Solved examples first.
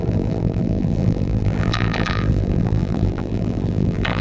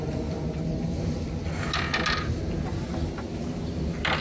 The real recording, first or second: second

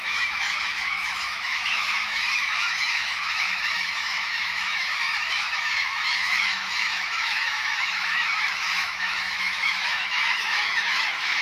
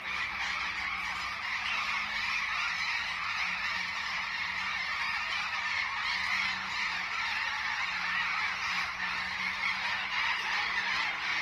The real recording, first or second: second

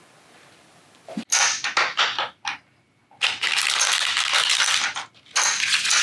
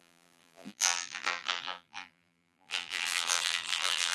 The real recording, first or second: first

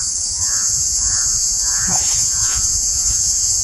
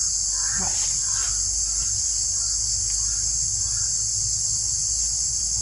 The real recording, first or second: second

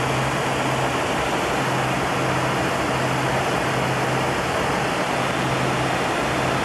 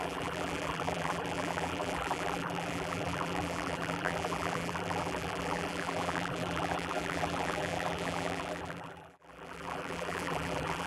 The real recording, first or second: first